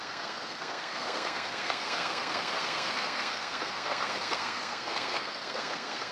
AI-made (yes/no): yes